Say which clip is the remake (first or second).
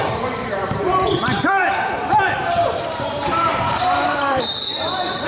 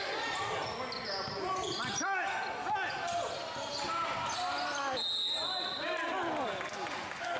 first